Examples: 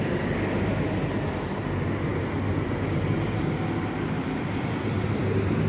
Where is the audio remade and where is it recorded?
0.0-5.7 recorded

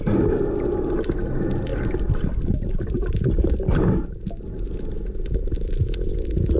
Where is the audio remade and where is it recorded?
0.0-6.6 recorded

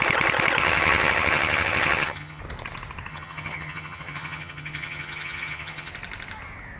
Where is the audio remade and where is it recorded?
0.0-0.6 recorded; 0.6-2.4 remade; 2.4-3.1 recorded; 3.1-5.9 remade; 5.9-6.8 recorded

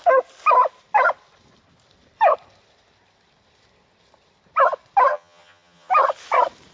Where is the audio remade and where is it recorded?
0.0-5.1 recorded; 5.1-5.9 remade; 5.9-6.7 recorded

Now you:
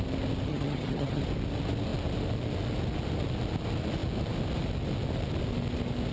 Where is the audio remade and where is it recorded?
0.0-0.5 recorded; 0.5-1.2 remade; 1.2-6.1 recorded

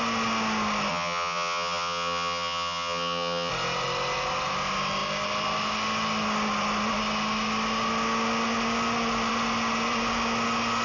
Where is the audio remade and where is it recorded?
0.0-0.9 recorded; 0.9-3.5 remade; 3.5-10.8 recorded